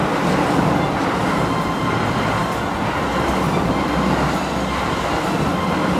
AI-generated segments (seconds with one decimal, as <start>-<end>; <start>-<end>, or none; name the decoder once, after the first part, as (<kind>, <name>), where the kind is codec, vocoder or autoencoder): none